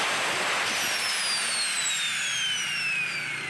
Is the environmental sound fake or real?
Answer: real